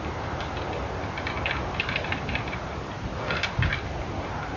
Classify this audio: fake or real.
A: fake